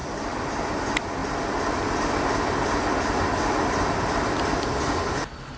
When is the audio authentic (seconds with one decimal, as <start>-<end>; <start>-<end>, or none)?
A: 0.0-5.6